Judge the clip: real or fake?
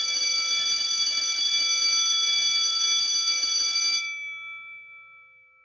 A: real